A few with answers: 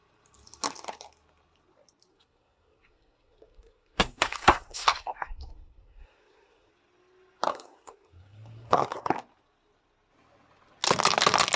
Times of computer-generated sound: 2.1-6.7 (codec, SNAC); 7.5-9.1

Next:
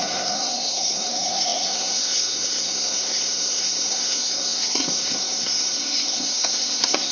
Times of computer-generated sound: 0.0-7.1 (codec, SNAC)

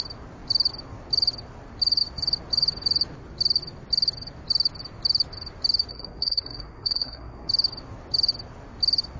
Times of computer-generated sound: 5.9-7.5 (codec, SNAC)

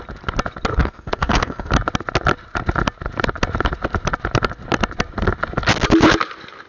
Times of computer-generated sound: 0.7-1.7 (codec, SNAC)

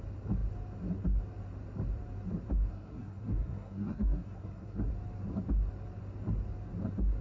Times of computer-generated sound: 2.7-4.9 (codec, SNAC)

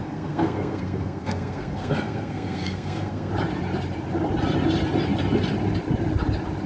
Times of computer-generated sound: 0.0-3.3 (codec, SNAC)

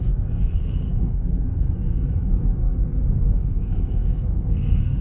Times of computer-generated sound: 0.0-5.0 (codec, SNAC)

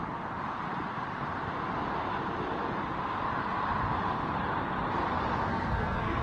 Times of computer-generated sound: 5.5-6.2 (codec, SNAC)